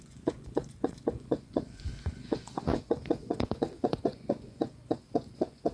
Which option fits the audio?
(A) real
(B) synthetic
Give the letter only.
B